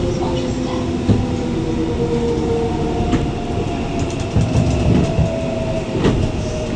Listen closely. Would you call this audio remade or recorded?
recorded